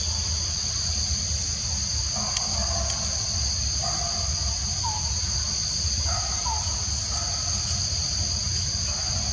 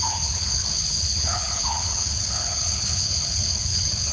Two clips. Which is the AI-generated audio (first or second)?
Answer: second